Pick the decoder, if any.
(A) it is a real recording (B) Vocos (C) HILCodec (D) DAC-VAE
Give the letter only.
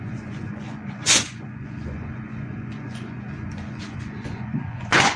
B